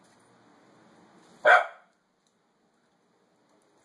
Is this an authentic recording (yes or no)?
yes